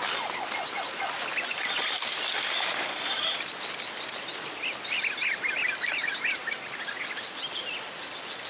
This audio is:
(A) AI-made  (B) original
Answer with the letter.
B